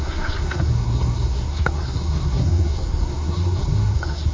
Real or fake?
fake